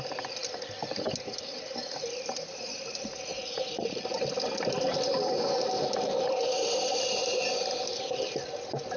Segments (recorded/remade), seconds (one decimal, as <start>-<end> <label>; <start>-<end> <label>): 0.0-9.0 recorded